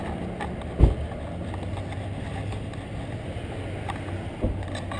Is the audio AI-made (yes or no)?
no